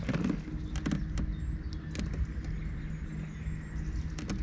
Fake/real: real